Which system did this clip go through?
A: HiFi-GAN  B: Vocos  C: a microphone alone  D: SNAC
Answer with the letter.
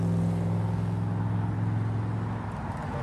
C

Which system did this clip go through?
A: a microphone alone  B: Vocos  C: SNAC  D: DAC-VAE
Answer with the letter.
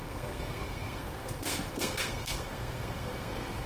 C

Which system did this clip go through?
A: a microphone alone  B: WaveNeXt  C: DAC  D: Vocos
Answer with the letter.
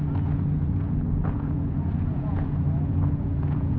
D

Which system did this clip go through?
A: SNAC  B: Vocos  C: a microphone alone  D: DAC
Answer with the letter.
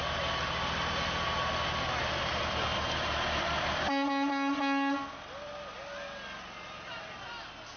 C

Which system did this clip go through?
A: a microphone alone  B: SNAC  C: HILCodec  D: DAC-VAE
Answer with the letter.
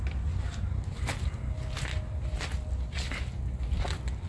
A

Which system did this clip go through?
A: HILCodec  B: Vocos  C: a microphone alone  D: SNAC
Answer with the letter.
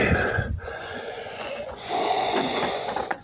B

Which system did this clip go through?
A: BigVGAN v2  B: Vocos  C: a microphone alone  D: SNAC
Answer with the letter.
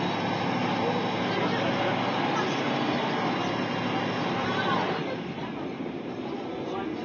C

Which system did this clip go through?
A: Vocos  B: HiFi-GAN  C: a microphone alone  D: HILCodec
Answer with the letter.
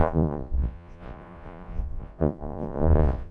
A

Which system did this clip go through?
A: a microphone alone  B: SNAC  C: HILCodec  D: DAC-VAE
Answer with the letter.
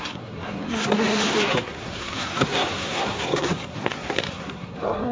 B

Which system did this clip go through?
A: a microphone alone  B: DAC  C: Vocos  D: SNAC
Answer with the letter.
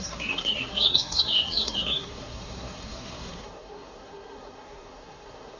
D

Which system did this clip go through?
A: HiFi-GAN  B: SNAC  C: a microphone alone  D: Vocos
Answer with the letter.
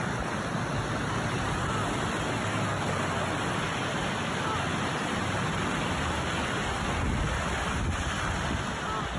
C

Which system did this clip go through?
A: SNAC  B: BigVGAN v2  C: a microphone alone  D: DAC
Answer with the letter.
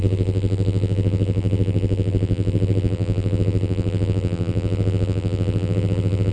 B